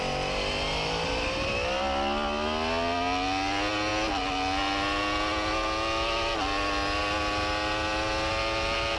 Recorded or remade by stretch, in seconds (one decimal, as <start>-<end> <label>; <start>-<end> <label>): 0.0-9.0 recorded